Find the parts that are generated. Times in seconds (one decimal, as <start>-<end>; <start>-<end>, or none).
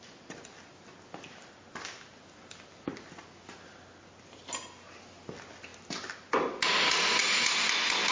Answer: none